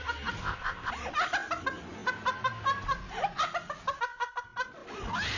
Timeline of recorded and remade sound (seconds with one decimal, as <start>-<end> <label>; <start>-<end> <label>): 0.0-0.4 recorded; 0.4-0.9 remade; 0.9-5.4 recorded